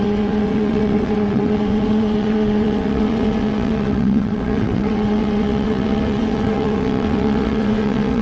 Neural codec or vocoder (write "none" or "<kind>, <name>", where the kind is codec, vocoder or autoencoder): vocoder, WaveNeXt